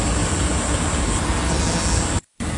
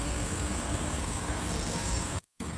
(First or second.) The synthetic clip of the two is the second